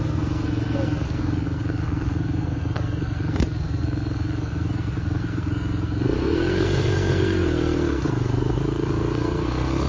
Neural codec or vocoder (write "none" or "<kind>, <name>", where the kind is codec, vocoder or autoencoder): codec, SNAC